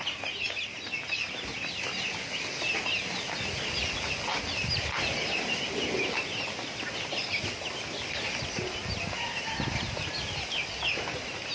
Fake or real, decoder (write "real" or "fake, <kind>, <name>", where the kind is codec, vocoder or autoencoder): real